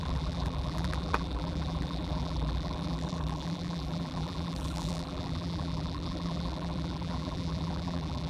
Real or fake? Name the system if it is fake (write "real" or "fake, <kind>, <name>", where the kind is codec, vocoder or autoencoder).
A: fake, vocoder, BigVGAN v2